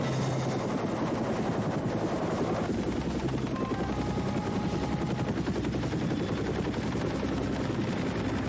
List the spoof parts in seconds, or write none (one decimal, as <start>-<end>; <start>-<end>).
none